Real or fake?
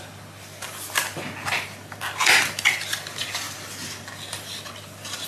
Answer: real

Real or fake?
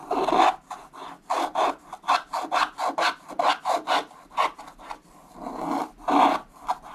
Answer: real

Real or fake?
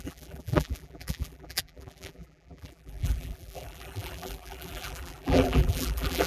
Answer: fake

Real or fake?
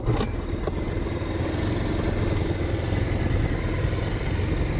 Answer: real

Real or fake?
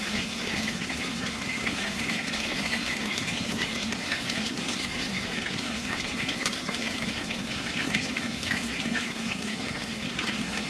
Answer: fake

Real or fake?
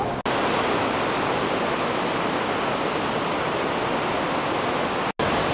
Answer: real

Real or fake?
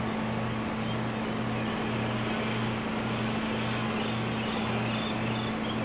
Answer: real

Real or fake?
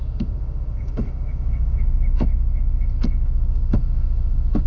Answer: fake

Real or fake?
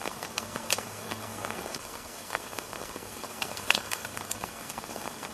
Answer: fake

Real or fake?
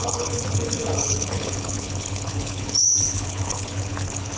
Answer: fake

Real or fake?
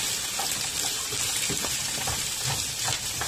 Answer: real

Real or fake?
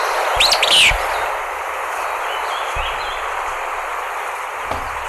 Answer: real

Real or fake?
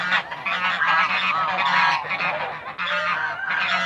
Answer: real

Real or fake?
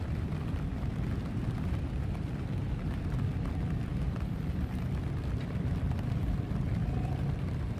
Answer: fake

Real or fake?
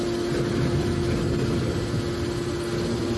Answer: real